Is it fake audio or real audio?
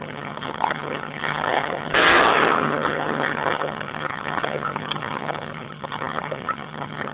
fake